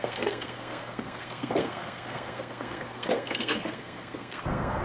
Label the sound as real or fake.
fake